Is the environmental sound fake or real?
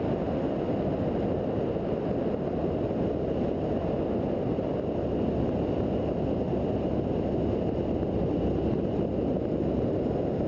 real